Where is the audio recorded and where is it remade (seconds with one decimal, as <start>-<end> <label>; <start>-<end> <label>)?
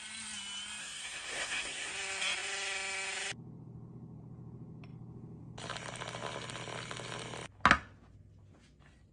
0.0-0.8 recorded; 0.8-1.9 remade; 1.9-9.1 recorded